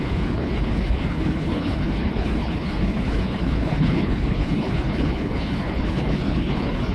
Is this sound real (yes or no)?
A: no